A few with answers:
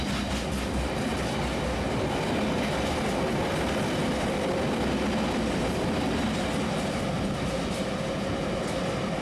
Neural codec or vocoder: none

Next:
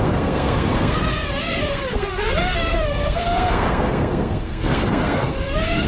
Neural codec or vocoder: codec, SNAC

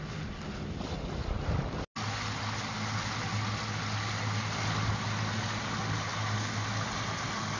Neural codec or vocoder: none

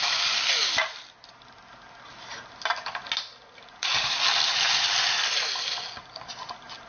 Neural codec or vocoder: none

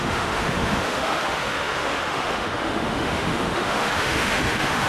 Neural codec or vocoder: autoencoder, DAC-VAE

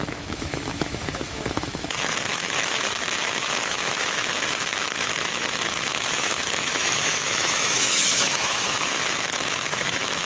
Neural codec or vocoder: autoencoder, DAC-VAE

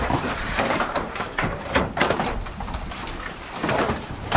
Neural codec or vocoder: vocoder, BigVGAN v2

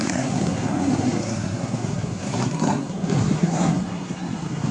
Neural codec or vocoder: codec, SNAC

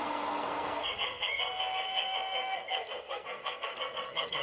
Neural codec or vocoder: codec, SNAC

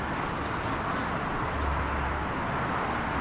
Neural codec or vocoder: none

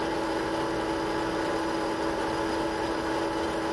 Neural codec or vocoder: none